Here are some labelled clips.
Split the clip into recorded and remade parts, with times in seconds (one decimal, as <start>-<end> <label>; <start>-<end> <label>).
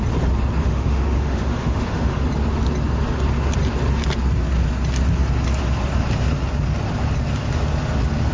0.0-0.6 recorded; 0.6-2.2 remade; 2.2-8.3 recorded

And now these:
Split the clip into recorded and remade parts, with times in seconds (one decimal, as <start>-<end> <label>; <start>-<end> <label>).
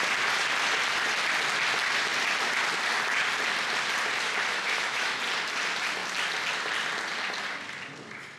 0.0-4.5 recorded; 4.5-5.2 remade; 5.2-8.4 recorded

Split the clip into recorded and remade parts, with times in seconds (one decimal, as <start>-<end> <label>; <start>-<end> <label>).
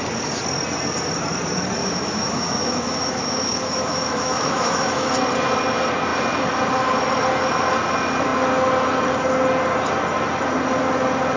0.0-1.8 recorded; 1.8-5.1 remade; 5.1-11.4 recorded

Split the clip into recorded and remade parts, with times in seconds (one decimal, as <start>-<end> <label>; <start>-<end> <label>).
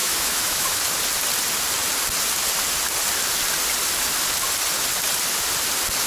0.0-0.8 remade; 0.8-6.1 recorded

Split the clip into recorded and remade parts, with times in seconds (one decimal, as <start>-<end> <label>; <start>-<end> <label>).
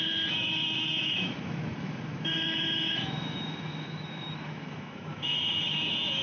0.0-6.2 remade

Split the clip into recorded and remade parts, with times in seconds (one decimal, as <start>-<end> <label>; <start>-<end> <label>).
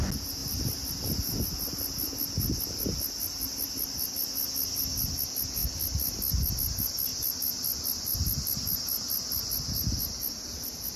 0.0-11.0 recorded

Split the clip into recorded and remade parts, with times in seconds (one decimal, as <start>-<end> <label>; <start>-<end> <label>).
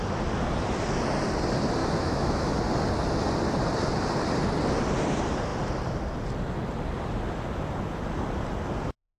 0.0-1.8 recorded; 1.8-2.6 remade; 2.6-9.2 recorded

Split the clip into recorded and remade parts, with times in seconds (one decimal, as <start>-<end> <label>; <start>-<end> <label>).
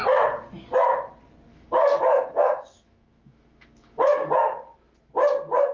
0.0-1.5 recorded; 1.5-4.3 remade; 4.3-5.7 recorded